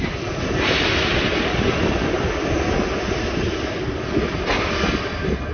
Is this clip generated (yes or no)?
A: no